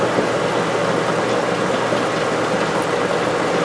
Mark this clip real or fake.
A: real